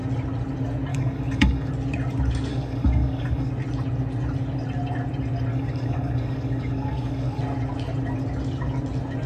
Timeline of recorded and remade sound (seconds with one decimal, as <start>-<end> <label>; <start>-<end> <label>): 0.0-0.9 recorded; 0.9-1.7 remade; 1.7-2.5 recorded; 2.5-3.5 remade; 3.5-5.5 recorded; 5.5-7.4 remade; 7.4-9.3 recorded